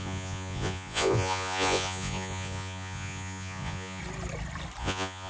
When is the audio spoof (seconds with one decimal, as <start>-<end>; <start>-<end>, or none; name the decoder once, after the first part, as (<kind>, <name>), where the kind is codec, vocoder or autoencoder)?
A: 0.0-4.0 (vocoder, Vocos); 4.8-5.3